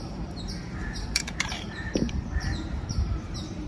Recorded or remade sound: remade